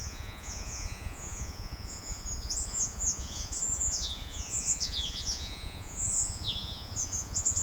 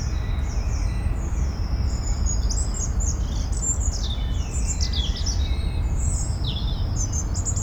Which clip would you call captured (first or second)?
second